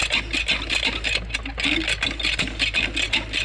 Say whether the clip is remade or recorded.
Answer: recorded